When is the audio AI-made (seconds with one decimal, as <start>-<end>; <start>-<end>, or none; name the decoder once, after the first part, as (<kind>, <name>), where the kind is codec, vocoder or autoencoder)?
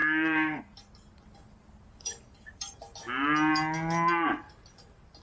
0.0-0.6 (codec, DAC)